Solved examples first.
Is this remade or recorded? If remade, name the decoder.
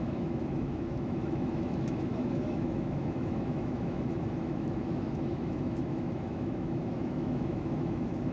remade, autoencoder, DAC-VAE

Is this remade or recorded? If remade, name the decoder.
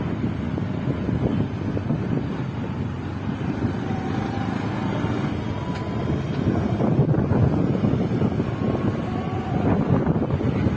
recorded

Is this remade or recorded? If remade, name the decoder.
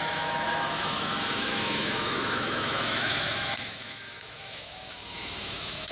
remade, autoencoder, DAC-VAE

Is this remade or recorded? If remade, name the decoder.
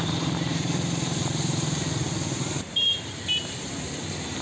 remade, vocoder, BigVGAN v2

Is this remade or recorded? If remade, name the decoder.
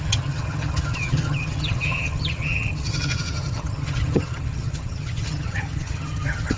remade, vocoder, HiFi-GAN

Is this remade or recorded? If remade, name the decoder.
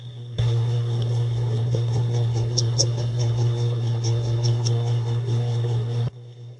remade, codec, SNAC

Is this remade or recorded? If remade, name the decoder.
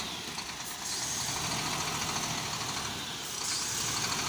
recorded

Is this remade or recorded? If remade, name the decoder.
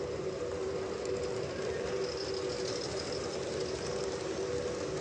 recorded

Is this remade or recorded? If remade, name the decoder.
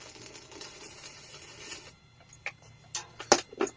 recorded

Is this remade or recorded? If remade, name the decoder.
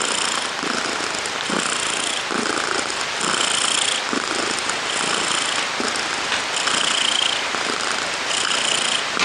recorded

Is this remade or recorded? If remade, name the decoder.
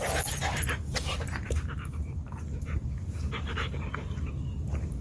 remade, vocoder, BigVGAN v2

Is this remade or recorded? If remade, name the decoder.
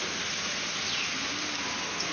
recorded